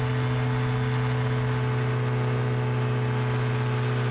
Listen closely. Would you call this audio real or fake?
real